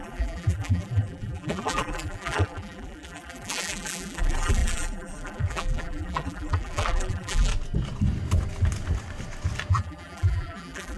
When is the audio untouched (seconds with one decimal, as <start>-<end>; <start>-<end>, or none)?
7.5-9.7